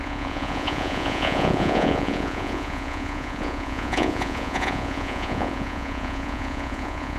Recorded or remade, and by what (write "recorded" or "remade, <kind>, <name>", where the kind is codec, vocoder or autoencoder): remade, vocoder, Vocos